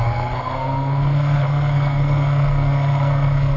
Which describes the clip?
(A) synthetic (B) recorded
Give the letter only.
A